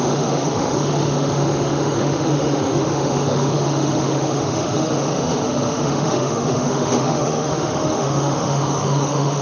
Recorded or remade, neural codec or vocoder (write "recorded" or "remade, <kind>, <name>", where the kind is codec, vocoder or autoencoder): remade, autoencoder, DAC-VAE